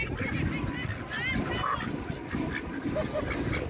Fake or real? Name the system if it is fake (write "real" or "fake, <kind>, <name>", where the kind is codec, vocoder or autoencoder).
real